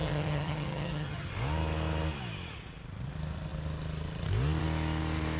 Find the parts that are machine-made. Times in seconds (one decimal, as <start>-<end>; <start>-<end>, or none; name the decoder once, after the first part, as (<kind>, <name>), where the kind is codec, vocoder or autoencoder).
0.0-1.3 (vocoder, HiFi-GAN)